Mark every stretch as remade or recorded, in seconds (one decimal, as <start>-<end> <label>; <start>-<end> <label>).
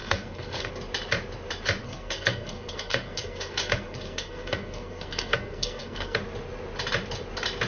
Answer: 0.0-0.7 remade; 0.7-1.8 recorded; 1.8-6.2 remade; 6.2-7.7 recorded